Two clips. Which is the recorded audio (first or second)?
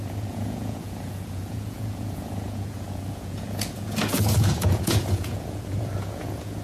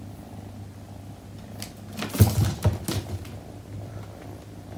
second